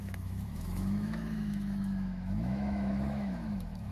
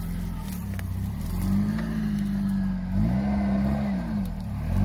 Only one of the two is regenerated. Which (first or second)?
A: first